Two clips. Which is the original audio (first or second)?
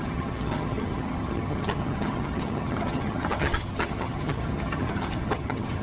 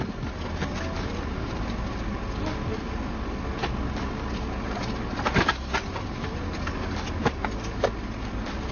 second